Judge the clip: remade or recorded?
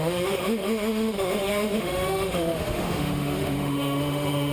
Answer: remade